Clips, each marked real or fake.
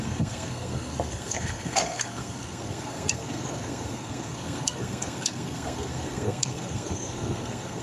fake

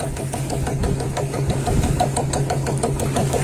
fake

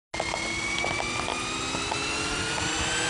real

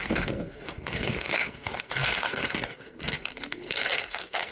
fake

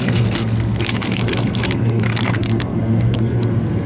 fake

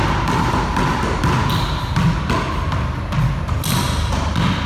real